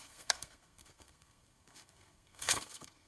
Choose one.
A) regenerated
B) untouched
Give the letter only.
A